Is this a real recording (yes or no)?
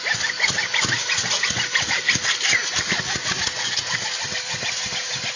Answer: yes